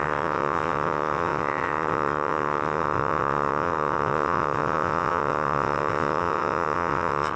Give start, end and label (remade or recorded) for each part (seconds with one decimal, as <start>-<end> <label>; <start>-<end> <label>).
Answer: 0.0-7.4 remade